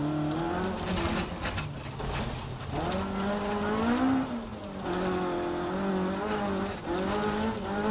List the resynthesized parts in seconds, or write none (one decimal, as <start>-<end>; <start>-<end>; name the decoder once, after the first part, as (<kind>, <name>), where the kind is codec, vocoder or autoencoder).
none